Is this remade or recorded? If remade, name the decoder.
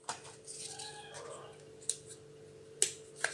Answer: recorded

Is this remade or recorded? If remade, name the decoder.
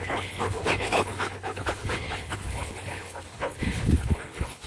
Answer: remade, codec, HILCodec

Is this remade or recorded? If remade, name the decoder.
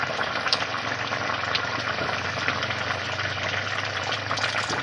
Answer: recorded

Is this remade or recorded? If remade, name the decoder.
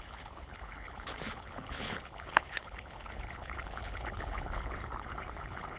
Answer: remade, codec, HILCodec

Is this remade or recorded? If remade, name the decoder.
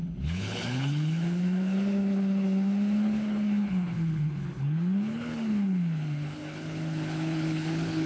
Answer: remade, codec, HILCodec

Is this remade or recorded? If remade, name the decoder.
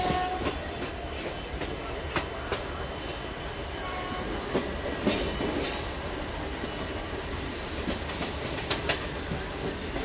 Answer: recorded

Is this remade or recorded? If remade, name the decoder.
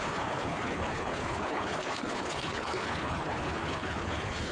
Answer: remade, codec, HILCodec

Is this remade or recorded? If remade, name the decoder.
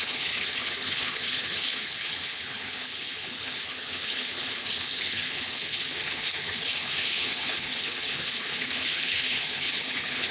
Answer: remade, codec, HILCodec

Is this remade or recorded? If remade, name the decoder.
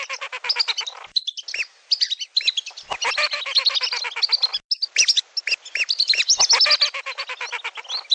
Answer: recorded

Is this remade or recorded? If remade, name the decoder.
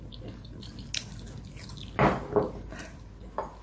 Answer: recorded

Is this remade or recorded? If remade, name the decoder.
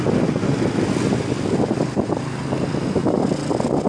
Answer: recorded